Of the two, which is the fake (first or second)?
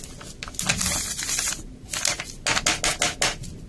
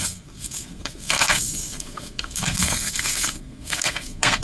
second